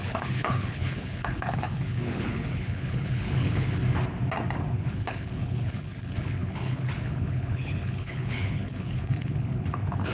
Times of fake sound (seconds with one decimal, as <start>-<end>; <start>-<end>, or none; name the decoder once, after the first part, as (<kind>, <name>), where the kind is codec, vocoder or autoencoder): 0.0-3.8 (codec, HILCodec); 4.7-10.1